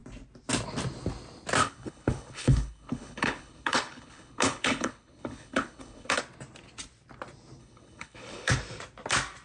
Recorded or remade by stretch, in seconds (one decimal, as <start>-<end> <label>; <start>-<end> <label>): 0.0-1.6 recorded; 1.6-6.2 remade; 6.2-7.6 recorded; 7.6-8.5 remade; 8.5-9.4 recorded